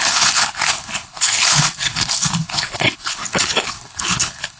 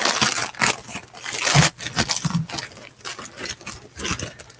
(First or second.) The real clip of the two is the second